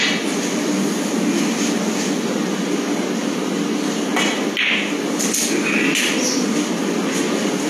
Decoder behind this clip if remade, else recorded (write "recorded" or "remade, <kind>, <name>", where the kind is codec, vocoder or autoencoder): recorded